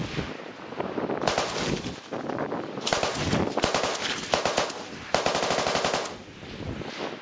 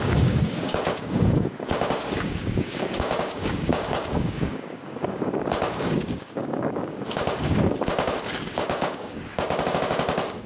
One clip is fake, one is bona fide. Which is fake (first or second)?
second